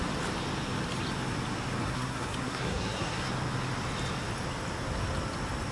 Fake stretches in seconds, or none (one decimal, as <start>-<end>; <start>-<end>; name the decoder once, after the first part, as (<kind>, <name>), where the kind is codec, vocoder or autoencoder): 1.8-3.3 (codec, SNAC)